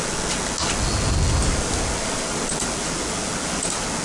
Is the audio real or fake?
real